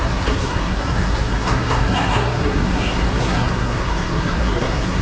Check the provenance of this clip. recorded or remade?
remade